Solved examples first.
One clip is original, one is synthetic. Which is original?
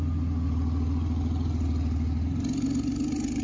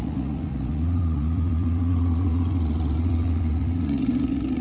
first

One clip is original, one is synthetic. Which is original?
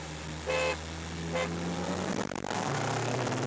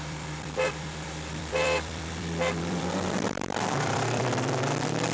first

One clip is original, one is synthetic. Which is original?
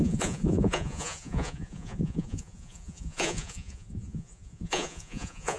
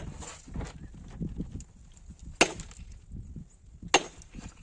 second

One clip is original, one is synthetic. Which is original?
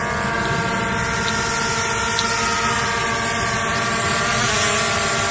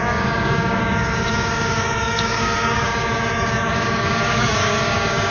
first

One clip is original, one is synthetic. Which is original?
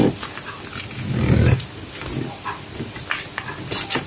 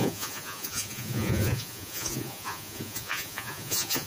first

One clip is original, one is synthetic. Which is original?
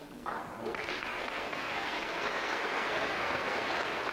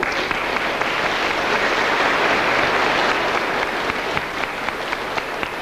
second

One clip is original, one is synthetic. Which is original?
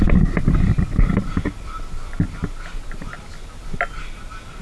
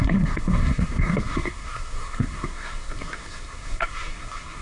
first